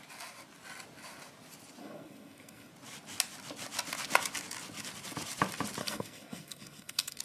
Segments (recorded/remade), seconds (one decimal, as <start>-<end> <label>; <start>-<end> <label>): 0.0-1.8 recorded; 1.8-2.7 remade; 2.7-5.8 recorded; 5.8-7.2 remade